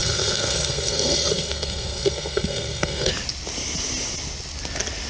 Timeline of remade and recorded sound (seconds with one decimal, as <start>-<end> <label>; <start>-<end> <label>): 0.0-3.1 remade; 3.1-5.1 recorded